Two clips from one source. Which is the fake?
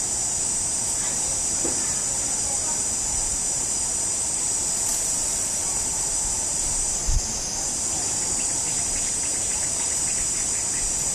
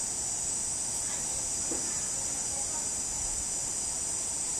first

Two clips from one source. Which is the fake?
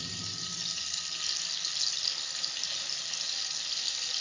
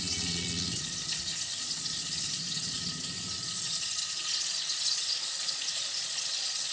second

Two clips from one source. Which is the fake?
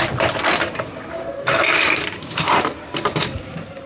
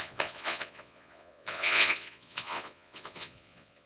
second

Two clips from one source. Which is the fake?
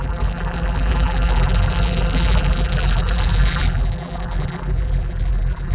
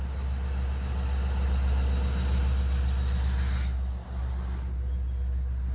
first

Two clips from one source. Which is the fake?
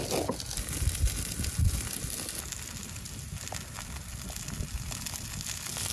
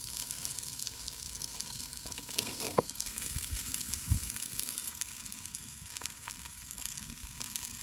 second